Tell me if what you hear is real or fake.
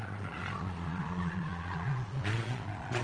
fake